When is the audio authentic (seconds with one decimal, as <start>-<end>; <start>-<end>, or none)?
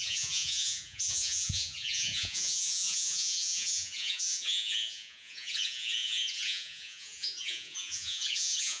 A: none